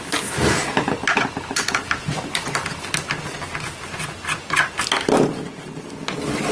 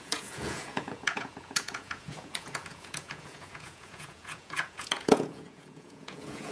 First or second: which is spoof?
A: second